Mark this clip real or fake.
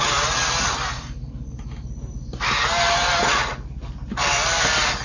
real